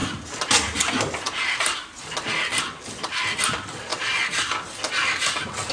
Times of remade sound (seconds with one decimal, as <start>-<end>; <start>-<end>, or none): none